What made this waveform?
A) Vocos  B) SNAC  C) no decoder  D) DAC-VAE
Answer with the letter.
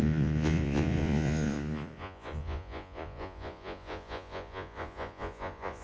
A